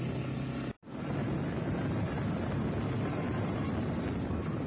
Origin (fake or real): real